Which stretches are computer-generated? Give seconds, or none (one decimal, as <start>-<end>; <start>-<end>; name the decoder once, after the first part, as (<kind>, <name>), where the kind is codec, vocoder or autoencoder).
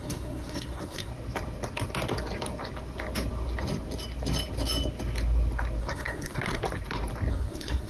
0.0-1.1 (codec, SNAC); 5.8-6.6; 7.3-7.9